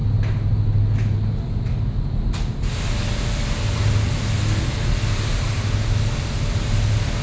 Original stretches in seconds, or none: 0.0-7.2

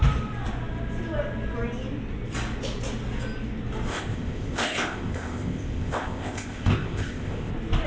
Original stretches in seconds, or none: 0.0-3.9; 7.5-7.9